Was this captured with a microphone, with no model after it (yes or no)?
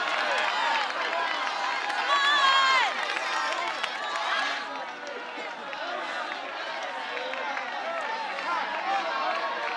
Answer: yes